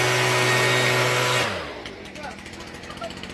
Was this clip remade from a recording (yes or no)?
no